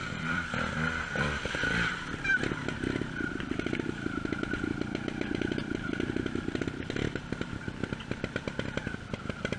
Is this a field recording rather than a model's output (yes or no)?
no